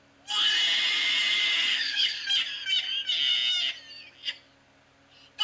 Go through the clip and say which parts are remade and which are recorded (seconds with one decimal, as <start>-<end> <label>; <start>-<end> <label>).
0.0-1.7 recorded; 1.7-2.2 remade; 2.2-5.4 recorded